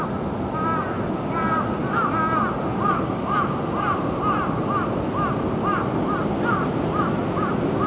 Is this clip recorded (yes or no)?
yes